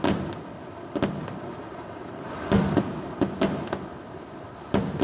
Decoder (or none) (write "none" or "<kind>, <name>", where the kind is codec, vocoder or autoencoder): none